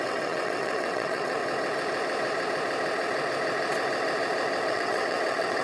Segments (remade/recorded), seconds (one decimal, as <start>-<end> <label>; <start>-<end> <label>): 0.0-1.4 remade; 1.4-4.7 recorded; 4.7-5.6 remade